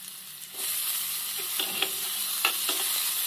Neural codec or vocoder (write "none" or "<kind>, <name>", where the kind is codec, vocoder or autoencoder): none